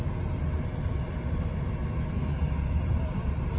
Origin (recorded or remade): recorded